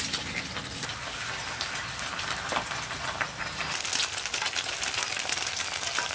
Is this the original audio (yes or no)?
yes